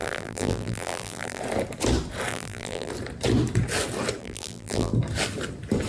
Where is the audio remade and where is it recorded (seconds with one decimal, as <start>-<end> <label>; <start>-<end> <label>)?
0.0-1.4 remade; 1.4-2.3 recorded; 2.3-2.9 remade; 2.9-4.2 recorded; 4.2-4.9 remade; 4.9-5.9 recorded